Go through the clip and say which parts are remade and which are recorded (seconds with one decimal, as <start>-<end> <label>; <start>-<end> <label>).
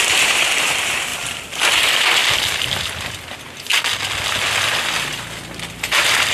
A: 0.0-1.1 remade; 1.1-1.6 recorded; 1.6-2.2 remade; 2.2-5.7 recorded; 5.7-6.3 remade